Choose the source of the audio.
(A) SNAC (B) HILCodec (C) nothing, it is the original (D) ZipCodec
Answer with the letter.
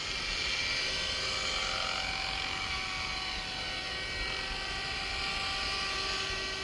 C